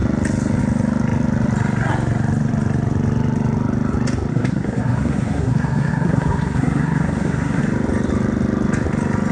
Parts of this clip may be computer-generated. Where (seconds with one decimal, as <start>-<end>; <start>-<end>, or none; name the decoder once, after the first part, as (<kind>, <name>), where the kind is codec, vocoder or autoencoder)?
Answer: 4.3-7.6 (codec, SNAC)